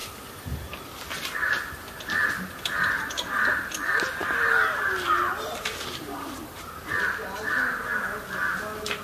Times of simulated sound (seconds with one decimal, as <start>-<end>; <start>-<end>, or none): 4.2-6.6